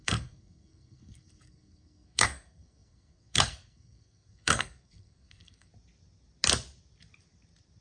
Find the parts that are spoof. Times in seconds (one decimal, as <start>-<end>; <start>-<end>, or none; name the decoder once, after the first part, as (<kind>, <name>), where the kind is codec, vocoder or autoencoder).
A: 0.0-5.7 (codec, SNAC)